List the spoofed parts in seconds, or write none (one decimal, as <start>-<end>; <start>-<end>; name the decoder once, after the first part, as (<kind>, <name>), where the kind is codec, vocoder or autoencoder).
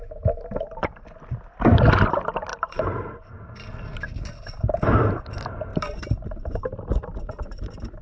2.5-3.6 (vocoder, BigVGAN v2); 5.7-6.6